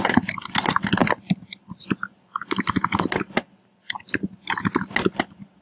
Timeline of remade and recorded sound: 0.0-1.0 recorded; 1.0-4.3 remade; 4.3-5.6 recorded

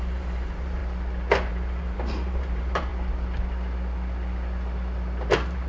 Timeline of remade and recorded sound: 0.0-0.8 remade; 0.8-1.5 recorded; 1.5-2.9 remade; 2.9-5.3 recorded; 5.3-5.7 remade

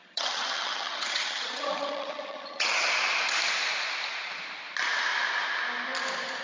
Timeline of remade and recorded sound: 0.0-2.9 remade; 2.9-6.4 recorded

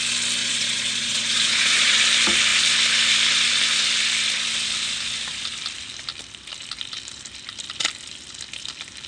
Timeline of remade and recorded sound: 0.0-0.4 recorded; 0.4-2.0 remade; 2.0-9.1 recorded

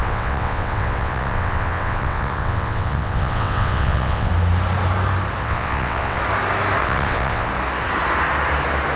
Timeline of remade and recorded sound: 0.0-4.3 remade; 4.3-5.4 recorded; 5.4-6.2 remade; 6.2-6.8 recorded; 6.8-7.5 remade; 7.5-9.0 recorded

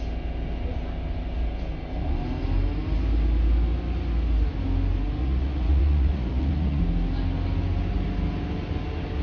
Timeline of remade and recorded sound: 0.0-5.2 recorded; 5.2-6.8 remade; 6.8-9.2 recorded

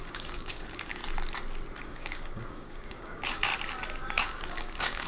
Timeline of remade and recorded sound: 0.0-1.0 remade; 1.0-1.8 recorded; 1.8-3.5 remade; 3.5-4.0 recorded; 4.0-5.1 remade

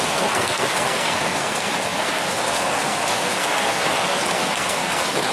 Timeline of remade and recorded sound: 0.0-5.3 remade